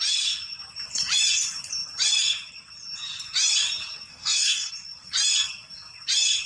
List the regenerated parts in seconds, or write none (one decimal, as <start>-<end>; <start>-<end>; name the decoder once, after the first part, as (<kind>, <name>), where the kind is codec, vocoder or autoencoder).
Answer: 4.1-4.7 (codec, DAC)